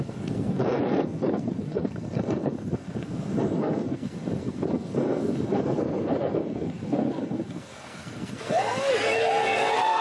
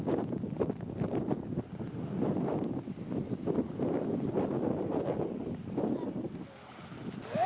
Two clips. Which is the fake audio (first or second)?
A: first